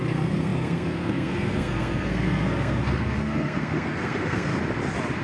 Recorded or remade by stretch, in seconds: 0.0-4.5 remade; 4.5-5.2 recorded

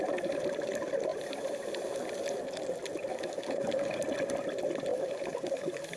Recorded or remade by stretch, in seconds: 0.0-3.1 recorded; 3.1-4.0 remade; 4.0-4.9 recorded; 4.9-6.0 remade

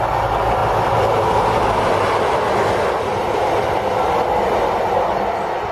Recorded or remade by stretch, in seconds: 0.0-5.7 recorded

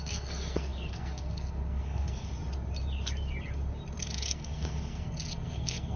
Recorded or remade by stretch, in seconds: 0.0-2.3 remade; 2.3-4.0 recorded; 4.0-6.0 remade

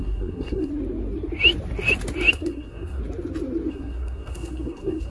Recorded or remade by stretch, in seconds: 0.0-0.7 remade; 0.7-2.3 recorded; 2.3-3.0 remade; 3.0-3.7 recorded; 3.7-5.1 remade

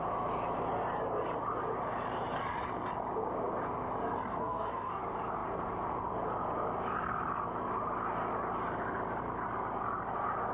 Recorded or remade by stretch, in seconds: 0.0-4.3 recorded; 4.3-5.0 remade; 5.0-10.5 recorded

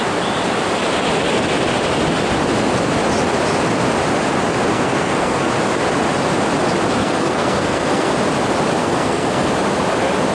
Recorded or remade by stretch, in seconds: 0.0-4.7 recorded; 4.7-5.5 remade; 5.5-7.0 recorded; 7.0-8.1 remade; 8.1-8.8 recorded; 8.8-9.5 remade; 9.5-10.3 recorded